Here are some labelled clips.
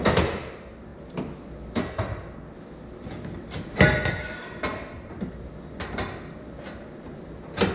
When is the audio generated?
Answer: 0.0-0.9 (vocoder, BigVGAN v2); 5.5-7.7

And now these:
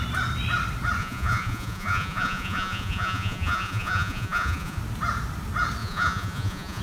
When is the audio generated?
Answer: 1.0-4.8 (vocoder, Vocos); 5.8-6.8

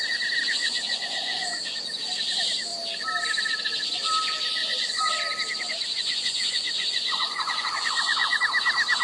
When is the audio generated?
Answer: 0.6-1.6 (vocoder, Vocos); 4.6-5.1; 5.9-8.4

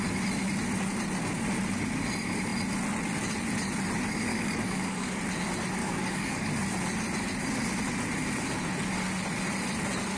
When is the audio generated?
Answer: 4.3-5.2 (codec, DAC); 5.8-6.5

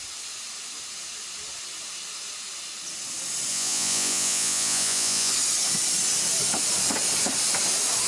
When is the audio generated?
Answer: 3.5-5.3 (vocoder, Vocos)

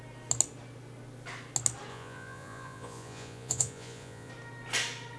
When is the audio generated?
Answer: 1.9-4.3 (vocoder, Vocos)